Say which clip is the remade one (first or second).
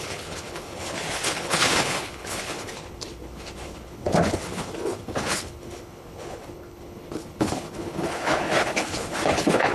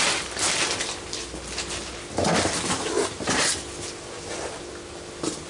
first